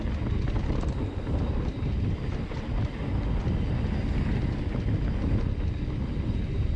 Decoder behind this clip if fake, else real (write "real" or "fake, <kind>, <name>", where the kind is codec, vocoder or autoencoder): real